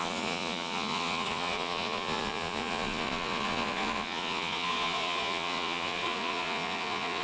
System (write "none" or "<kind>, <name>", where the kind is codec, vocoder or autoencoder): vocoder, Vocos